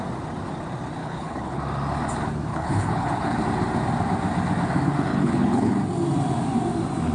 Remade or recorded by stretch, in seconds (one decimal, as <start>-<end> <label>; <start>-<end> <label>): 0.0-1.0 recorded; 1.0-1.6 remade; 1.6-2.5 recorded; 2.5-3.4 remade; 3.4-5.1 recorded; 5.1-5.7 remade; 5.7-7.1 recorded